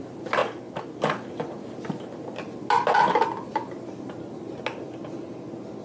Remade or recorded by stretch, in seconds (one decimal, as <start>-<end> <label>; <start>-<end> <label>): 0.0-5.8 recorded